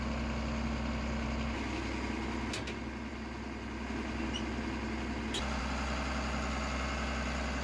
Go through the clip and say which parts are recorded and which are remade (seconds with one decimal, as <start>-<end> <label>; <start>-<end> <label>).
0.0-7.6 recorded